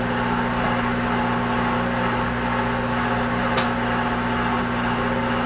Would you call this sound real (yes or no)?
yes